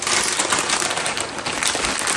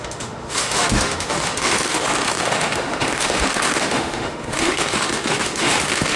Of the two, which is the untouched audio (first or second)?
first